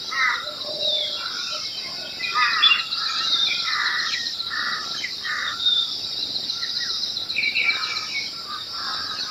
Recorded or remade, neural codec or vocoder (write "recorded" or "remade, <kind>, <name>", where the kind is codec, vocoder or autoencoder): remade, vocoder, BigVGAN v2